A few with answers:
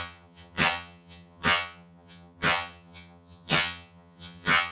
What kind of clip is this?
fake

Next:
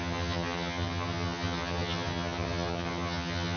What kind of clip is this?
fake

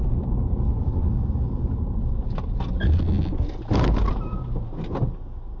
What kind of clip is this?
real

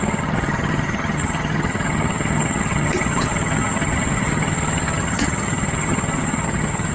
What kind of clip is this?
fake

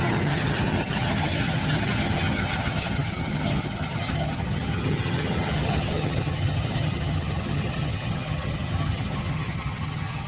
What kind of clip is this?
fake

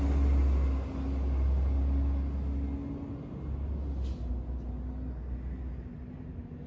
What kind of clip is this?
real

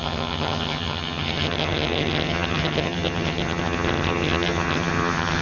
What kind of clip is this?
fake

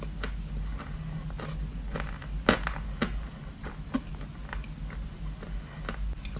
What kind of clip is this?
real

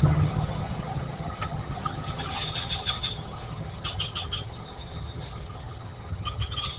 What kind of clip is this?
fake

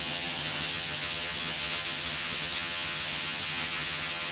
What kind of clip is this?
fake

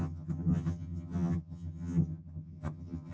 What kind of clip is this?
fake